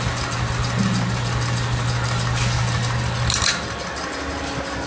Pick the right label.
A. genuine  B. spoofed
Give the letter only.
A